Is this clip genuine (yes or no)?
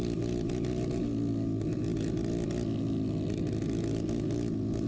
yes